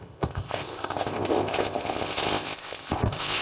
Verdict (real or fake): fake